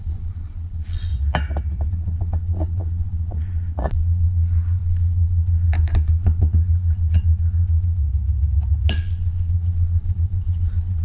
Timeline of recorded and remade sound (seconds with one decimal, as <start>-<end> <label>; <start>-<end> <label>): 0.0-1.1 remade; 1.1-1.9 recorded; 1.9-8.0 remade; 8.0-8.9 recorded; 8.9-11.0 remade

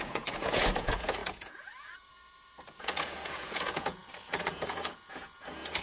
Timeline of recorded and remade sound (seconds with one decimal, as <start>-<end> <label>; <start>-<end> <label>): 0.0-5.8 remade

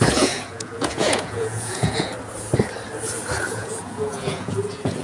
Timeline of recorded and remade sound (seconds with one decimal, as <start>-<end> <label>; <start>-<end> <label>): 0.0-2.1 remade; 2.1-3.5 recorded; 3.5-5.0 remade

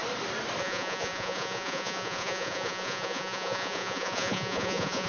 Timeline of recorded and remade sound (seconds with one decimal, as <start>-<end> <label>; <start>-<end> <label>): 0.0-0.6 recorded; 0.6-5.1 remade

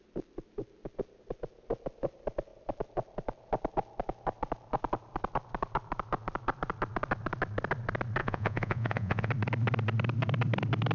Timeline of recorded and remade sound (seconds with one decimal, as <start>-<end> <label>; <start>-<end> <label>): 0.0-8.2 recorded; 8.2-9.3 remade; 9.3-10.9 recorded

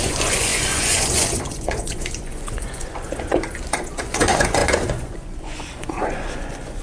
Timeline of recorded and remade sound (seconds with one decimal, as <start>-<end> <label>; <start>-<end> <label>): 0.0-6.8 remade

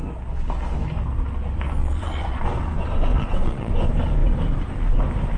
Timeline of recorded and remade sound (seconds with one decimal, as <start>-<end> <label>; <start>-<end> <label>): 0.0-1.8 recorded; 1.8-2.4 remade; 2.4-3.1 recorded; 3.1-3.7 remade; 3.7-5.4 recorded